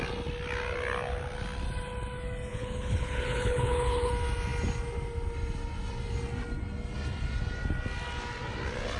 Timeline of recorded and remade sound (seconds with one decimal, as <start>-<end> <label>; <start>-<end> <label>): 0.0-2.5 recorded; 2.5-4.1 remade; 4.1-9.0 recorded